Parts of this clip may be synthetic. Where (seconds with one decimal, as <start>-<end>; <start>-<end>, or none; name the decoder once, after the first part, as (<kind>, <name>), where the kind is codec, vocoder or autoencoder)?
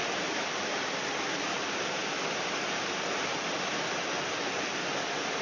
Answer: none